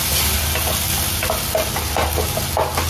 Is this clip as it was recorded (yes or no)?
yes